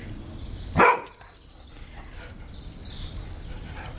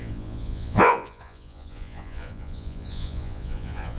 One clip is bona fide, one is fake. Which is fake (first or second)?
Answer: second